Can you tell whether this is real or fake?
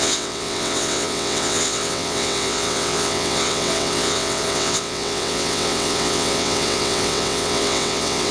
fake